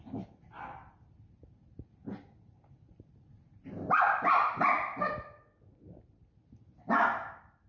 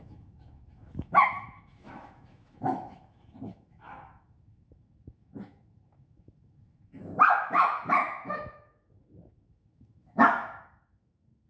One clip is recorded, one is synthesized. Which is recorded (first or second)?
first